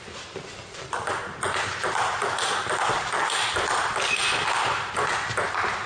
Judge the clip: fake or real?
real